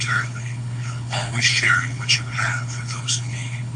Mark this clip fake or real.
fake